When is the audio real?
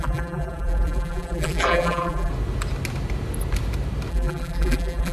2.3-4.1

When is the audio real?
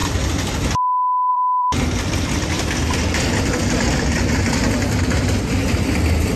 0.5-1.3; 4.2-6.4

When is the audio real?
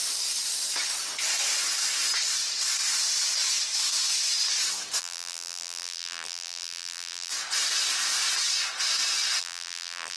0.0-5.0; 7.3-9.4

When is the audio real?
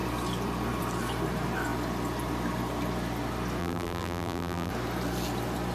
0.0-3.6; 4.7-5.7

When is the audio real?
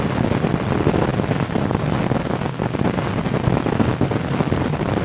0.0-1.1; 1.8-5.0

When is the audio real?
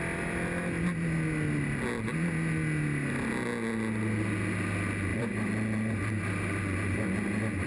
0.0-5.1; 6.4-7.7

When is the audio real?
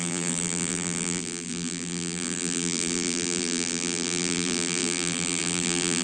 none